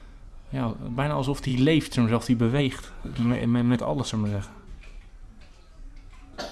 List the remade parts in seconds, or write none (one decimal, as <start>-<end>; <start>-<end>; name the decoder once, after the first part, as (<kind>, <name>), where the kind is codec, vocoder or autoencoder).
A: 3.0-4.1 (codec, SNAC)